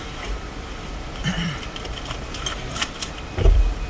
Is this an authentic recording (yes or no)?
no